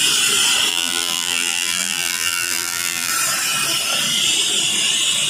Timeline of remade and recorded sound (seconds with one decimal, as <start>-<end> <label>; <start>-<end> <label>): 0.0-0.7 recorded; 0.7-3.1 remade; 3.1-5.3 recorded